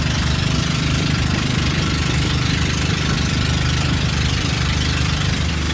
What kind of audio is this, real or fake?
fake